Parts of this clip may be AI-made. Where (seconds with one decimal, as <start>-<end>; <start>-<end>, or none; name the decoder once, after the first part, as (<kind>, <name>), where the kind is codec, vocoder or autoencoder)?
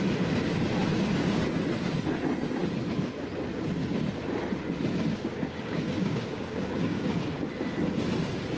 5.1-7.4 (codec, DAC)